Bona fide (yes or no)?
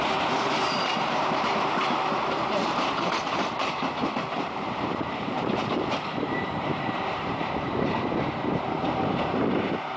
no